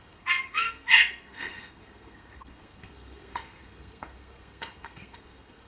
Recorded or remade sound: remade